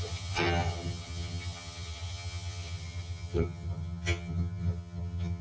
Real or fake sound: fake